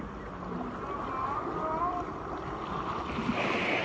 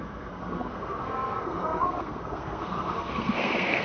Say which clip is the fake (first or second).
second